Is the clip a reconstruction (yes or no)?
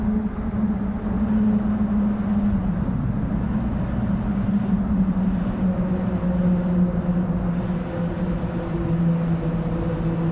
no